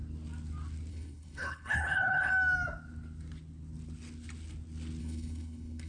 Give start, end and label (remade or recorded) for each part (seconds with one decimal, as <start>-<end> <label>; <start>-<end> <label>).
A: 0.0-0.9 recorded; 0.9-2.3 remade; 2.3-5.0 recorded; 5.0-5.9 remade